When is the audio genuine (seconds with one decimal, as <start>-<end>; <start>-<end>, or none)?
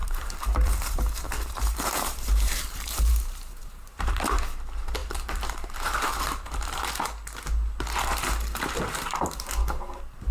4.4-5.0; 6.8-10.3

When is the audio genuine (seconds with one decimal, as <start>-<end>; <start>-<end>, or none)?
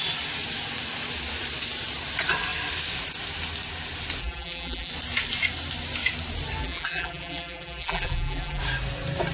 0.0-4.2; 4.9-6.6; 8.6-9.3